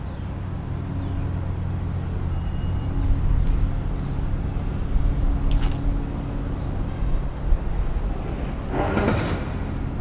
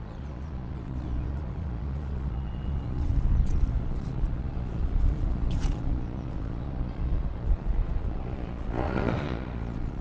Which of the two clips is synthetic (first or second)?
second